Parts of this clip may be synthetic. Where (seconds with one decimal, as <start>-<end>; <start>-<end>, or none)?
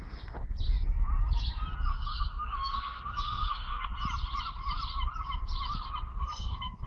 1.9-3.9; 6.1-6.9